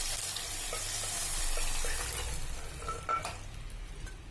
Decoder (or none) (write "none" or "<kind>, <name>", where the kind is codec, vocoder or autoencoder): vocoder, BigVGAN v2